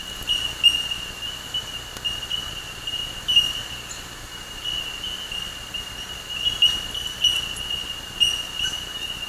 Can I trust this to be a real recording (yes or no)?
yes